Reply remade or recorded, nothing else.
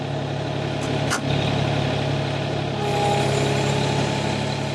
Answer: recorded